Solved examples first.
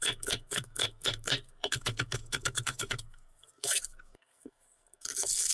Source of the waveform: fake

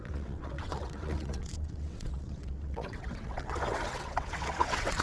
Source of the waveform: fake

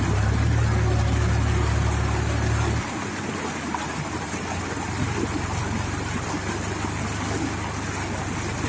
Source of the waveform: real